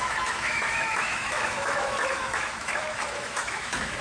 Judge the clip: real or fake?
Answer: fake